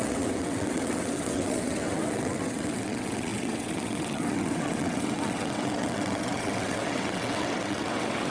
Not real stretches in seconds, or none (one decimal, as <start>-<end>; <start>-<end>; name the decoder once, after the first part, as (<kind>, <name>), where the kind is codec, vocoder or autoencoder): 0.0-8.3 (vocoder, WaveNeXt)